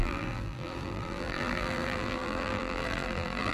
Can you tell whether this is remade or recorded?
remade